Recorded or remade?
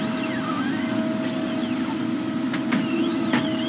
recorded